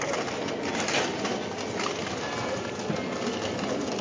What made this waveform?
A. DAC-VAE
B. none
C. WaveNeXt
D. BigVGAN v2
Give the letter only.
B